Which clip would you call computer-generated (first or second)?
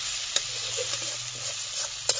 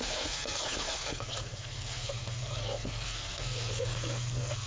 second